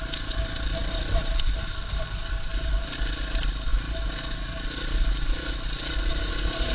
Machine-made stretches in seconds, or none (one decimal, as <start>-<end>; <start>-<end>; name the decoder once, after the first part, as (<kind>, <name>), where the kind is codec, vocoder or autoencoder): 0.8-2.5 (vocoder, BigVGAN v2)